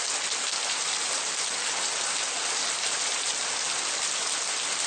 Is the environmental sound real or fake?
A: real